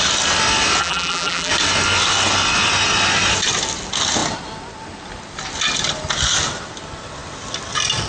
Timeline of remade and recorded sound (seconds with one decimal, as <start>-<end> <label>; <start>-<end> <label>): 0.0-0.8 recorded; 0.8-1.5 remade; 1.5-8.1 recorded